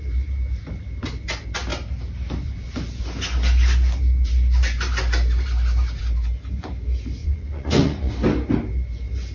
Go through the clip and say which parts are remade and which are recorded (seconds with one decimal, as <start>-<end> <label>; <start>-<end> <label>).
0.0-7.2 recorded; 7.2-8.1 remade; 8.1-9.3 recorded